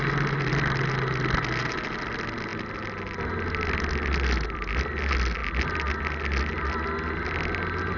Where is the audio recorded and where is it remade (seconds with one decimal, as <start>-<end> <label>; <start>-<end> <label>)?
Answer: 0.0-8.0 recorded